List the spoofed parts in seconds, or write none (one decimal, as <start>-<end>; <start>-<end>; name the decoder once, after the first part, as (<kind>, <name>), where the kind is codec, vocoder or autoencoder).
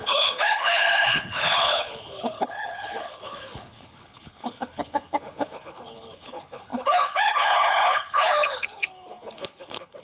0.0-10.0 (codec, HILCodec)